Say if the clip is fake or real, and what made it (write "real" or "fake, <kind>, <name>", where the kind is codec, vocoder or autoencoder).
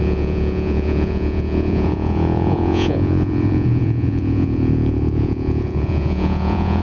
fake, vocoder, Vocos